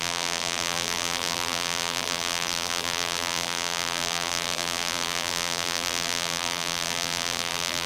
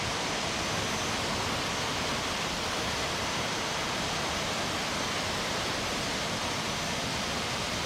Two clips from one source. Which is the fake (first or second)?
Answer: first